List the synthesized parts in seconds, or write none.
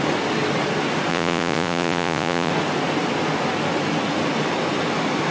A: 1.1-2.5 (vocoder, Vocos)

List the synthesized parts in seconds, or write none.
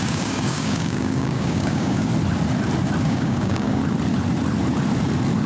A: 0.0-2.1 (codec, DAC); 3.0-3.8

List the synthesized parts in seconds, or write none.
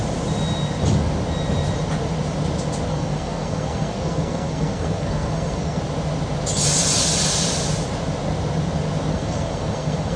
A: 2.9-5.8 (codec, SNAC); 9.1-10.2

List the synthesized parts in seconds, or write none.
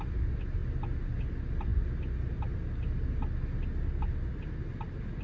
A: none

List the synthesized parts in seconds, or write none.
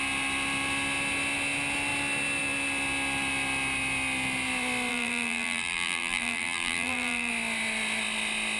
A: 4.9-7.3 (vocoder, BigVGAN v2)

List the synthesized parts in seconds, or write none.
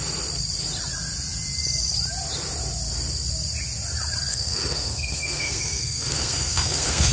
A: 4.3-7.1 (codec, SNAC)